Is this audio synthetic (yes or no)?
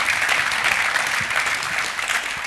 no